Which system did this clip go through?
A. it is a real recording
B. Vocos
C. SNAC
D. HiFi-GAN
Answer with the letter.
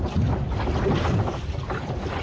A